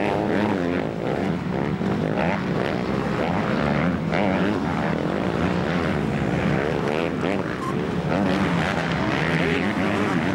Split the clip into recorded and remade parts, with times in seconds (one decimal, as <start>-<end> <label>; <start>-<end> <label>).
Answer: 0.0-10.3 recorded